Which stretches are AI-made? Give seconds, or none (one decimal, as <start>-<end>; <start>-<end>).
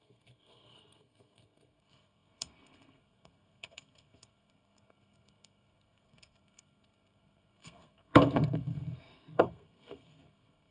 0.0-10.7